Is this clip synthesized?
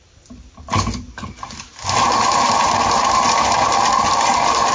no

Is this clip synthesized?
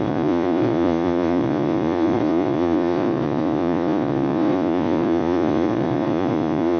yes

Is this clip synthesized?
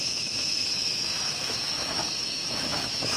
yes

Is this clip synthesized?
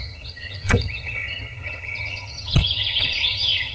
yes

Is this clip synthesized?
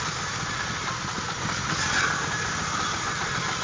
no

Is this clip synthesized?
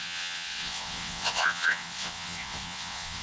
yes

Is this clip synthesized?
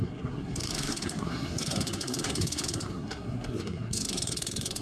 yes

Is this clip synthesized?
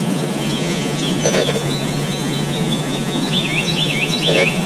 yes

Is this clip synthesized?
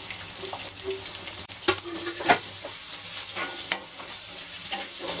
no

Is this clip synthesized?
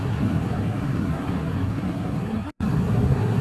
yes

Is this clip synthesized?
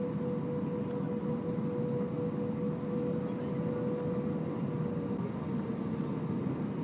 no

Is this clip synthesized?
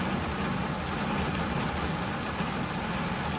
no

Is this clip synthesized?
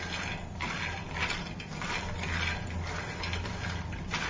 no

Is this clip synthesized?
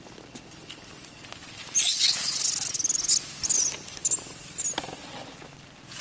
no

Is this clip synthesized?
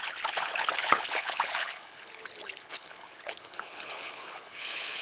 yes